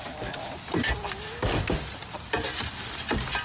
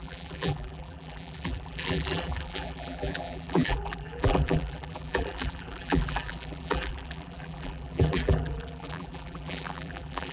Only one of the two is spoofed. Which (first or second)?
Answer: second